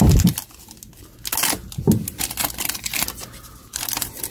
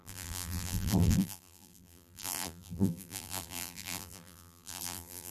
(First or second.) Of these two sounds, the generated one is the second